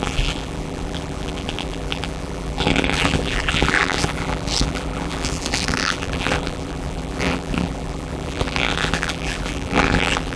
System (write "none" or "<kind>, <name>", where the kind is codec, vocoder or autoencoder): vocoder, BigVGAN v2